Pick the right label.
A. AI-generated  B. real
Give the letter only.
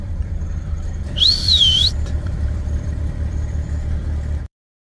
A